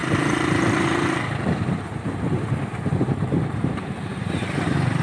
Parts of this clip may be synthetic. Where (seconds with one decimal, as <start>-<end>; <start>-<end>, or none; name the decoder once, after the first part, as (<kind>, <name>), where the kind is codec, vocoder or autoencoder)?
0.0-5.0 (vocoder, BigVGAN v2)